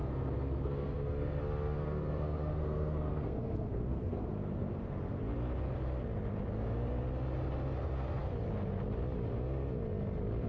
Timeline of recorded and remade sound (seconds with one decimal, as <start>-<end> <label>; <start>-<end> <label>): 0.0-5.2 remade; 5.2-10.5 recorded